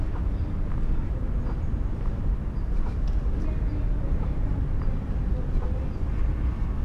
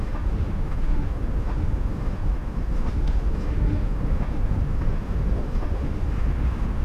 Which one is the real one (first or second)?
first